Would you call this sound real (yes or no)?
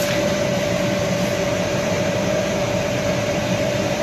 no